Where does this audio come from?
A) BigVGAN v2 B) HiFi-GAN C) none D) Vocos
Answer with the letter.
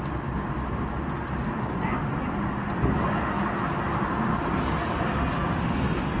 C